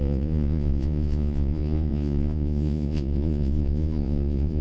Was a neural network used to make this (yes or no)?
yes